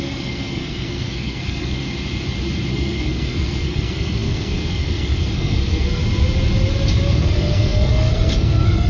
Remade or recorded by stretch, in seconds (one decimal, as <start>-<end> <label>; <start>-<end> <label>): 0.0-1.8 remade; 1.8-2.7 recorded; 2.7-6.0 remade; 6.0-7.1 recorded; 7.1-8.9 remade